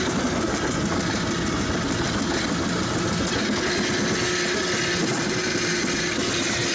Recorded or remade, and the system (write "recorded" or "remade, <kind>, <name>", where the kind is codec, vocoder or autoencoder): recorded